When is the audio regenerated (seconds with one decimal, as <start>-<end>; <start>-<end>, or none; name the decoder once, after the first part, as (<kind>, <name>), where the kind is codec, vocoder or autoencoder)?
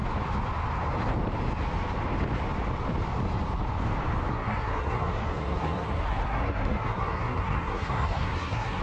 4.3-8.8 (codec, SNAC)